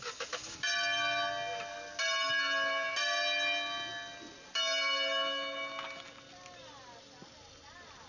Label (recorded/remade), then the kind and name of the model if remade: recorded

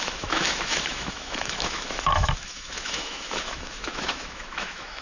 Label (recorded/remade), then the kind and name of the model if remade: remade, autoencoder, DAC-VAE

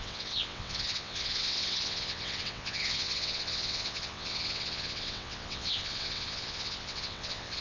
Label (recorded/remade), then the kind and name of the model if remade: remade, vocoder, WaveNeXt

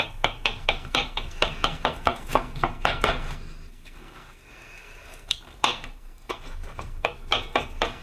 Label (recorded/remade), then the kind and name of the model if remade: remade, codec, SNAC